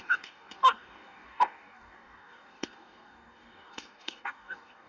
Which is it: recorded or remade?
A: remade